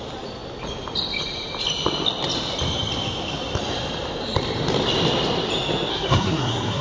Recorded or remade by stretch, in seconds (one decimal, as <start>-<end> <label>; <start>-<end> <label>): 0.0-5.9 recorded; 5.9-6.8 remade